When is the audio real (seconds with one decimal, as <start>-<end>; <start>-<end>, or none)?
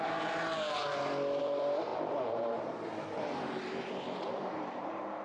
0.8-1.4